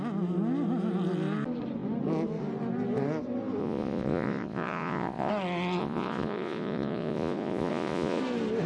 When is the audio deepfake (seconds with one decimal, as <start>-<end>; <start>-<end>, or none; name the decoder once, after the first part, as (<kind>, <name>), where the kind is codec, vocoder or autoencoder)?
3.6-5.3 (vocoder, Vocos); 5.8-8.2